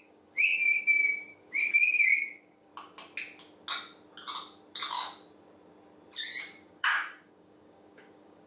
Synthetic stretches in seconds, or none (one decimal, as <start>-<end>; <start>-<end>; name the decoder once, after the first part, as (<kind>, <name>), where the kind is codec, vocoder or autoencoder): 0.0-2.7 (codec, DAC); 6.4-8.5